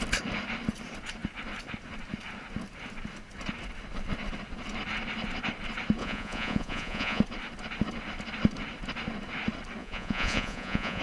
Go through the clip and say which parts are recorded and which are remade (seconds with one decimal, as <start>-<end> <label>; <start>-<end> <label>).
0.0-6.0 recorded; 6.0-7.2 remade; 7.2-9.8 recorded; 9.8-11.0 remade